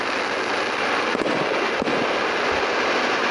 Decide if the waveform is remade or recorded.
recorded